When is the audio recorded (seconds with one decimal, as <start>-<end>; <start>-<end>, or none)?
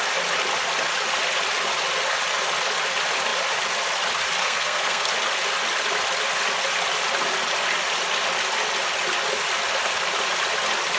0.0-4.4; 5.1-11.0